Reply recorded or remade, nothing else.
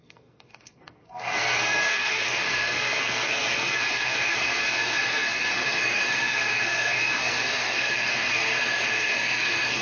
remade